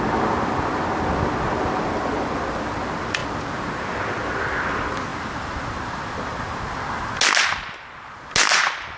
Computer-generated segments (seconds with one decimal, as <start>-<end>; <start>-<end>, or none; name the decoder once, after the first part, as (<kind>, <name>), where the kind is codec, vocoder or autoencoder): none

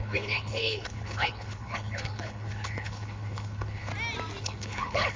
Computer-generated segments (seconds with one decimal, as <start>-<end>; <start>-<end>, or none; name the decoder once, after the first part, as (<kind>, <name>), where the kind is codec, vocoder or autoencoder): 0.0-3.9 (codec, HILCodec); 4.4-5.2

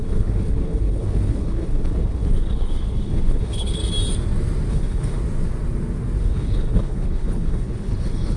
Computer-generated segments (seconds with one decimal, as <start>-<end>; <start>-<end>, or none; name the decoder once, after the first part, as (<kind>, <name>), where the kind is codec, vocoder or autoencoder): 0.0-3.8 (codec, HILCodec); 4.7-5.2; 6.2-8.4

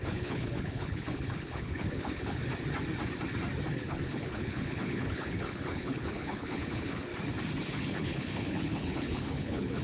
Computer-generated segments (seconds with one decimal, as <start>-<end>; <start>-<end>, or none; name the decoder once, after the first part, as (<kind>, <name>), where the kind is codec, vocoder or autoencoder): 0.0-2.4 (codec, HILCodec); 3.7-7.1; 7.6-9.8

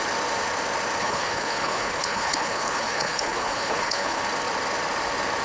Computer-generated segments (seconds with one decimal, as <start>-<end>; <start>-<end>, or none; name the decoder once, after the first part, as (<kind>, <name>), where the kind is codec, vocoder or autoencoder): 1.0-4.2 (codec, HILCodec)

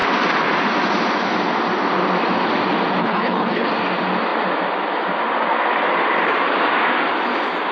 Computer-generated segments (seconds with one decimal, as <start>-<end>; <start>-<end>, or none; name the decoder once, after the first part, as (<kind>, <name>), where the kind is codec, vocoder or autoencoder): 3.0-3.7 (codec, HILCodec)

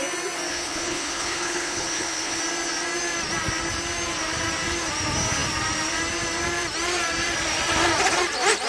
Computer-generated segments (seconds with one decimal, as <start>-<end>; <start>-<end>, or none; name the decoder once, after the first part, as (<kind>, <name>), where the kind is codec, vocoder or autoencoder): 0.5-2.4 (codec, HILCodec)

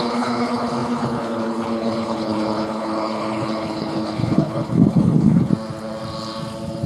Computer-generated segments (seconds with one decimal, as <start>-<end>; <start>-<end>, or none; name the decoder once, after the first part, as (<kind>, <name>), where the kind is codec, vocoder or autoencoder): 0.0-5.5 (codec, HILCodec)